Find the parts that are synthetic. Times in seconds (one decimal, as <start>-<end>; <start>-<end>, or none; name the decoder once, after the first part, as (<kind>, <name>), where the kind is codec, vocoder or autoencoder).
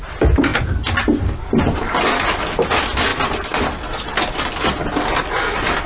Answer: none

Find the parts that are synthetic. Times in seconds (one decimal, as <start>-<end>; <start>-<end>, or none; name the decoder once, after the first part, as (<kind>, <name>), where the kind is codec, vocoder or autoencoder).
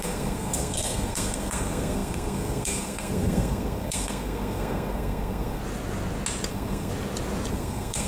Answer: 0.0-5.6 (codec, SNAC); 6.5-6.9; 7.5-8.1